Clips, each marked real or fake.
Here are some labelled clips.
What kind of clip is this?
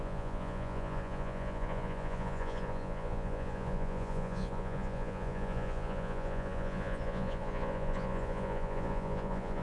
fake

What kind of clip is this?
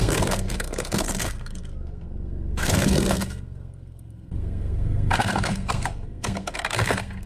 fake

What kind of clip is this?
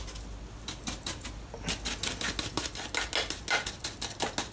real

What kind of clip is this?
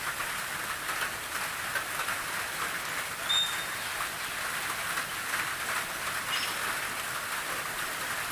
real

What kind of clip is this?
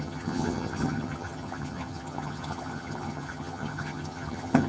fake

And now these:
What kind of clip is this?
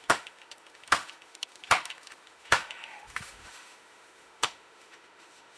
fake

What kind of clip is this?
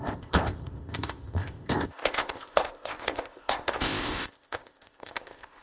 fake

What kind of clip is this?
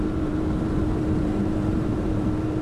fake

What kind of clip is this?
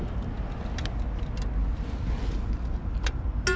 real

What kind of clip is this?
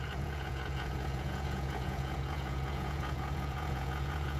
fake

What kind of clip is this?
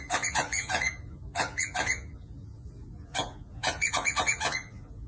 fake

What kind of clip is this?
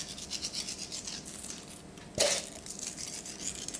real